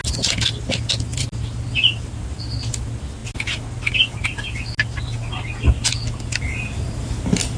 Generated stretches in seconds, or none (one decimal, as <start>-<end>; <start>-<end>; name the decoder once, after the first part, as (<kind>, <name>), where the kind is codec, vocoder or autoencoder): none